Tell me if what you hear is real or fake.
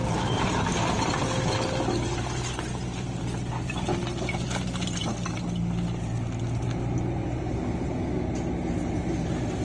real